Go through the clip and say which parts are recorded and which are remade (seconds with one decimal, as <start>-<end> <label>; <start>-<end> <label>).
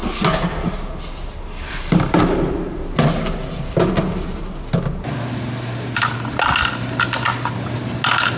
0.0-8.4 recorded